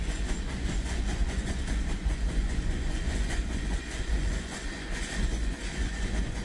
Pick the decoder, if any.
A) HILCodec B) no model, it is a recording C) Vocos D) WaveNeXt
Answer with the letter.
C